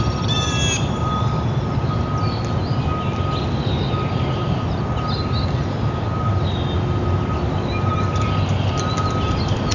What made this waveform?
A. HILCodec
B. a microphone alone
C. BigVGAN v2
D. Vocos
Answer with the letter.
B